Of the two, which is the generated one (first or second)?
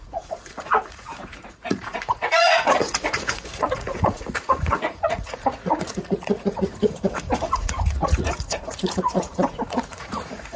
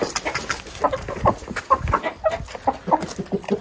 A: first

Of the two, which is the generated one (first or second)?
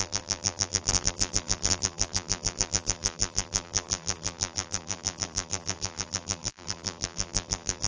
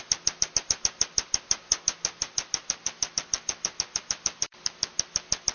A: first